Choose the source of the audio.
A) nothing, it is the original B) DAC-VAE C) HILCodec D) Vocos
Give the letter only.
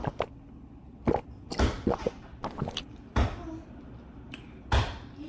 A